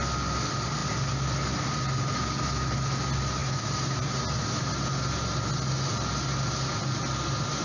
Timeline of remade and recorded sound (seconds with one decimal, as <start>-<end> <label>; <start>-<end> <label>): 0.0-7.6 recorded